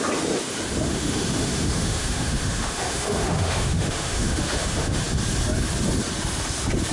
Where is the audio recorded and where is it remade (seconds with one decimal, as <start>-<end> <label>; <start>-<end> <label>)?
0.0-0.9 recorded; 0.9-5.0 remade; 5.0-6.9 recorded